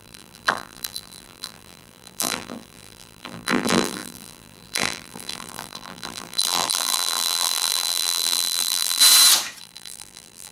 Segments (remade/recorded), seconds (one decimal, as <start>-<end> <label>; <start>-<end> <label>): 0.0-9.0 remade; 9.0-9.6 recorded; 9.6-10.5 remade